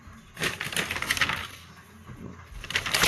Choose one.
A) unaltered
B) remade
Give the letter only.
A